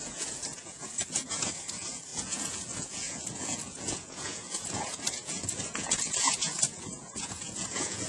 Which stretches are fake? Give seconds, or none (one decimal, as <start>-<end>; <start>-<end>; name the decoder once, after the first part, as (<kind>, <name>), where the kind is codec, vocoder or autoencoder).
0.0-8.1 (vocoder, Vocos)